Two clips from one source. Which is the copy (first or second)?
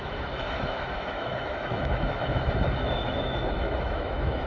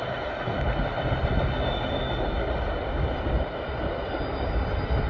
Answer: first